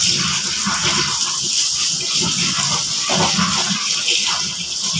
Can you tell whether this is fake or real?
real